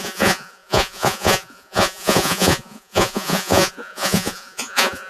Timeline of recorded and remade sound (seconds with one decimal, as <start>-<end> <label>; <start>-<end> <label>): 0.0-5.1 remade

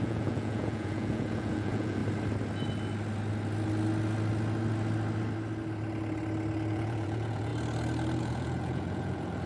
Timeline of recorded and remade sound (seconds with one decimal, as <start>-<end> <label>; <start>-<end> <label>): 0.0-2.0 remade; 2.0-6.7 recorded; 6.7-7.5 remade; 7.5-8.2 recorded; 8.2-9.5 remade